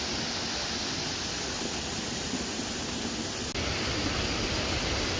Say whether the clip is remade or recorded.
recorded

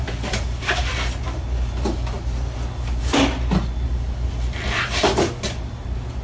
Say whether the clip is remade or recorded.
recorded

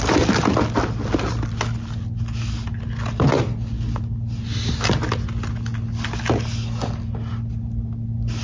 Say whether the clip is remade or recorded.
recorded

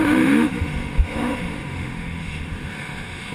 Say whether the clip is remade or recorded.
remade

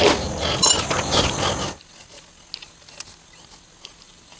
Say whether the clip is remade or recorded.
recorded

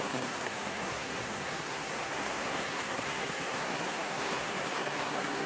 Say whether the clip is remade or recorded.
remade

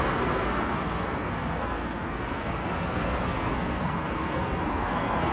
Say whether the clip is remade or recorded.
remade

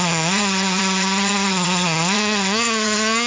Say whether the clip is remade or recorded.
remade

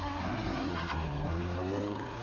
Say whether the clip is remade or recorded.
remade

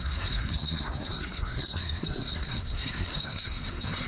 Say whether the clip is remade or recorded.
remade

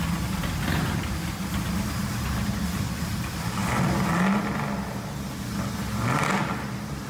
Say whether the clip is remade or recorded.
recorded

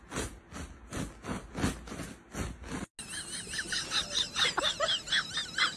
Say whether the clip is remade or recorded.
recorded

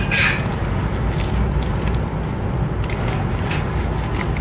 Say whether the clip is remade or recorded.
recorded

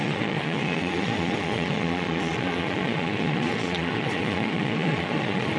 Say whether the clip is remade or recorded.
remade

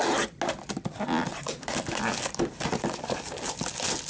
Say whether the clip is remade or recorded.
recorded